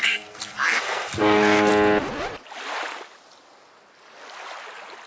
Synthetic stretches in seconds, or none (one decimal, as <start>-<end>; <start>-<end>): 0.0-1.7